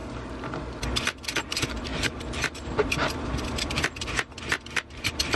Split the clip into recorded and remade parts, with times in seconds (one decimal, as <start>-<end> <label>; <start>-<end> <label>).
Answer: 0.0-0.7 recorded; 0.7-5.4 remade